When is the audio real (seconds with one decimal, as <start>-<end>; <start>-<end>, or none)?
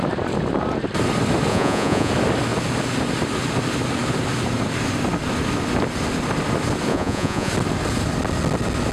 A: 0.0-1.5; 2.1-6.9; 7.5-8.9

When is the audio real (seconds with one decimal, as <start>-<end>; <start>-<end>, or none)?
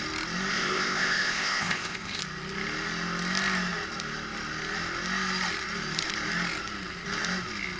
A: 0.0-0.5; 2.2-7.8